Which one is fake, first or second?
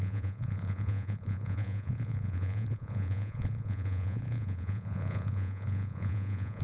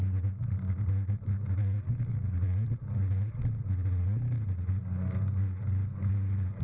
first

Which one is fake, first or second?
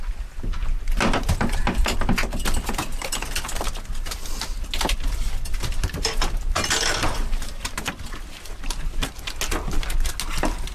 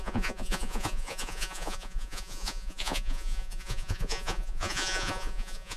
second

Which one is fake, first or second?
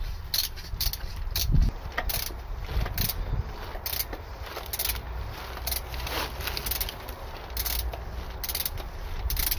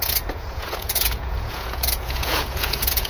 second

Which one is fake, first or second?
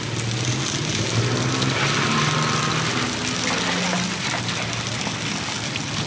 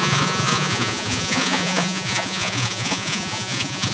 second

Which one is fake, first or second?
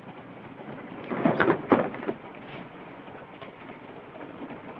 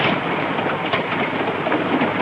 first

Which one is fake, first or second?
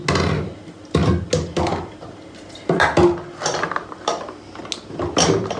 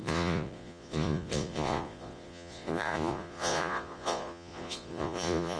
second